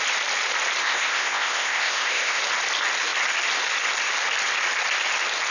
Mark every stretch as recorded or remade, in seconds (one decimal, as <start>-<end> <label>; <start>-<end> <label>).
0.0-0.8 recorded; 0.8-2.4 remade; 2.4-5.5 recorded